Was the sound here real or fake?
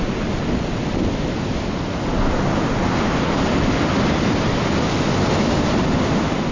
real